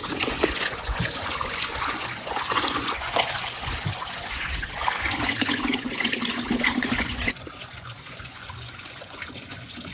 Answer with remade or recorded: remade